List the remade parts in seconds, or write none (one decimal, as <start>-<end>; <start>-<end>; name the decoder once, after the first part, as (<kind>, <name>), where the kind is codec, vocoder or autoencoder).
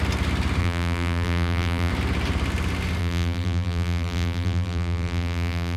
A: 0.6-1.9 (vocoder, BigVGAN v2); 3.0-5.8